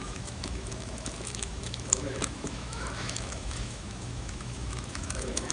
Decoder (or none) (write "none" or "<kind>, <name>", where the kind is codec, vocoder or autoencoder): autoencoder, DAC-VAE